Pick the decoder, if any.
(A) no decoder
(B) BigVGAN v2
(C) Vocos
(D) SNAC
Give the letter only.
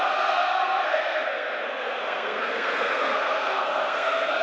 D